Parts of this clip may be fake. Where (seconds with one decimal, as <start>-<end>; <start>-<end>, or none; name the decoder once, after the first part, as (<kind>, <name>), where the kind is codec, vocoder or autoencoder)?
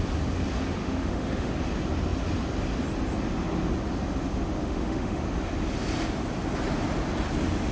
0.8-1.5 (autoencoder, DAC-VAE); 4.6-5.2